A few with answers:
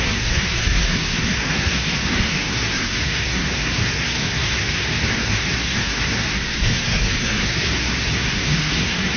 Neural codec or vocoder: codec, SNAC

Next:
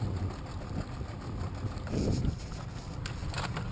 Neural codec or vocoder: none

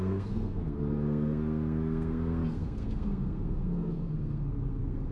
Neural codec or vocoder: codec, SNAC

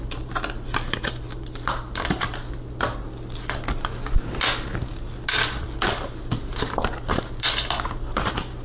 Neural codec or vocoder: none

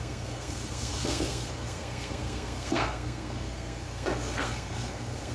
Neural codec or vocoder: codec, SNAC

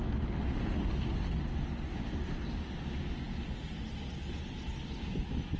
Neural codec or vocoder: none